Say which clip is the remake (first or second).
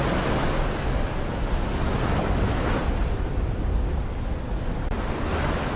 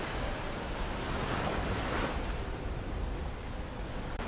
second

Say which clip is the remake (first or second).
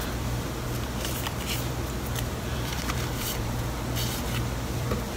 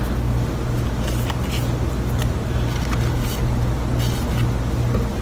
first